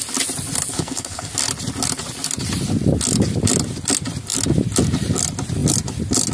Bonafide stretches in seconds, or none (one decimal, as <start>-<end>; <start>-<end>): 0.0-0.7; 1.3-6.3